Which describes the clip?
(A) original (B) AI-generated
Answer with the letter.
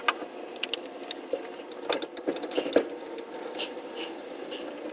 A